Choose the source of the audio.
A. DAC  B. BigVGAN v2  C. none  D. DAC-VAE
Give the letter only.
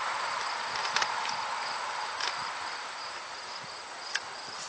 C